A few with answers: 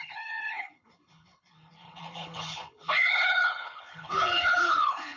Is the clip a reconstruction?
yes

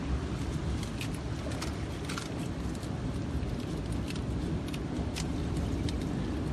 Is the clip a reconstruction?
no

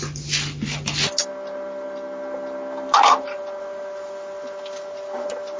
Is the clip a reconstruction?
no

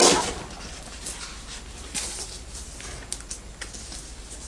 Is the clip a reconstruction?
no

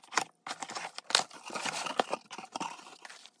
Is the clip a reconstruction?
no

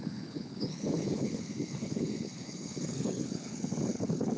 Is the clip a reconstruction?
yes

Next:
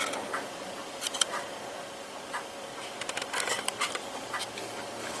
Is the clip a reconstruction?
no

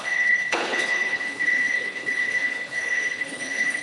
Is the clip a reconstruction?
yes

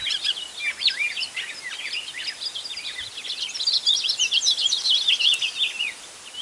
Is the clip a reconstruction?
no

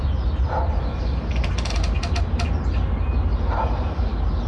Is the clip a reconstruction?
no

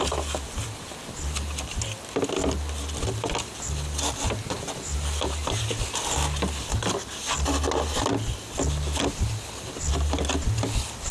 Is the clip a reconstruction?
no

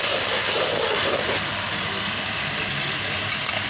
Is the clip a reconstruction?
no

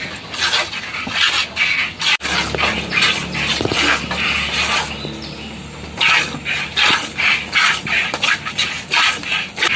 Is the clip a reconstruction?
no